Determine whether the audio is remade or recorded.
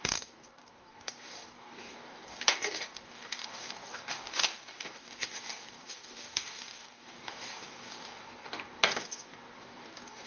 remade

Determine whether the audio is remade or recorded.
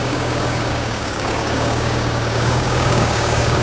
remade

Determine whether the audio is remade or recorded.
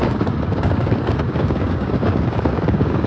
remade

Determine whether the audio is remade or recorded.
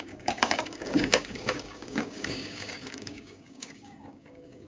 remade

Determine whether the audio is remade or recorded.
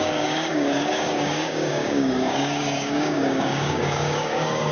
remade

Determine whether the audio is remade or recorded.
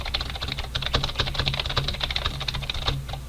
recorded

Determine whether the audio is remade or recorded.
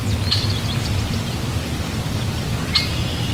recorded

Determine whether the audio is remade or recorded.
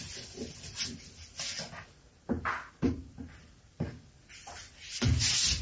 recorded